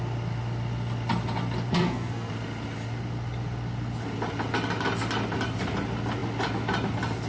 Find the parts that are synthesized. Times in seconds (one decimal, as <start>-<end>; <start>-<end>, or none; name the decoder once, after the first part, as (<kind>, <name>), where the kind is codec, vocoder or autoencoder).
1.7-2.3 (codec, SNAC)